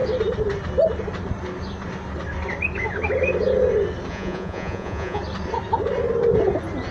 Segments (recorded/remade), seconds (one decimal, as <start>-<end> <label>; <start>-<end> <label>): 0.0-4.1 recorded; 4.1-5.2 remade; 5.2-6.9 recorded